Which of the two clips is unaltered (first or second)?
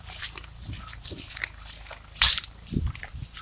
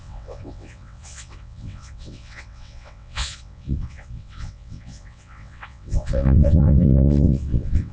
first